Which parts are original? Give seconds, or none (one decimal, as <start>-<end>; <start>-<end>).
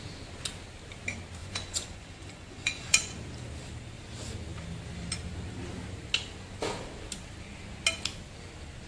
0.0-1.4; 3.2-8.9